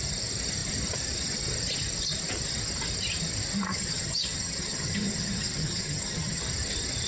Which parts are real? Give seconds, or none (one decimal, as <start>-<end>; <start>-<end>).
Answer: 0.0-3.7; 6.4-7.1